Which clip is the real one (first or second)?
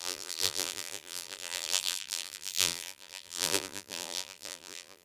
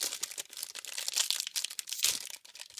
second